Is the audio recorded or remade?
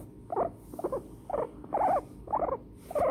recorded